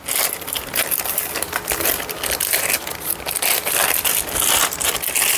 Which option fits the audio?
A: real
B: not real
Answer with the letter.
A